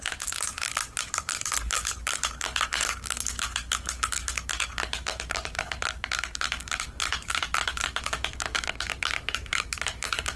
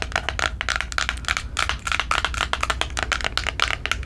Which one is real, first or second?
second